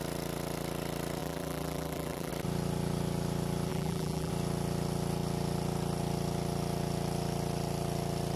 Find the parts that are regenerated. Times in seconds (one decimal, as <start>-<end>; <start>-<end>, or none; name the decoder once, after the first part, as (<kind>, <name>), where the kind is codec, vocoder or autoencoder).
1.2-2.3 (vocoder, BigVGAN v2); 3.7-4.3